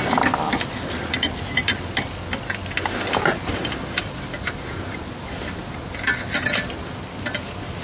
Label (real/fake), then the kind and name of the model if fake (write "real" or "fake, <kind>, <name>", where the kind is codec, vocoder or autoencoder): real